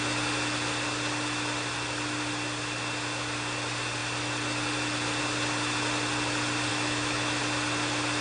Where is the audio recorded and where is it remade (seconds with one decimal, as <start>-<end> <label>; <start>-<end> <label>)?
0.0-6.7 recorded; 6.7-7.4 remade; 7.4-8.2 recorded